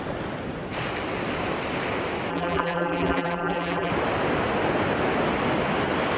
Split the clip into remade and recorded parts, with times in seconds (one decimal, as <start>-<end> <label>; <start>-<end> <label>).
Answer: 0.0-2.3 recorded; 2.3-3.9 remade; 3.9-6.2 recorded